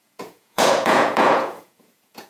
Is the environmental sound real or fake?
fake